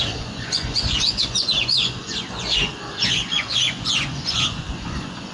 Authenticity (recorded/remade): remade